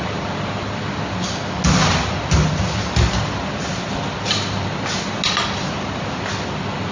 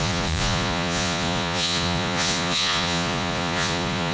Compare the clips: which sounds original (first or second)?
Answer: first